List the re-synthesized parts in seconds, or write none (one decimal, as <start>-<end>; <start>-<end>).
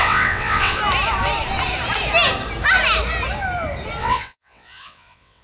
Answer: 0.0-0.8; 4.0-5.4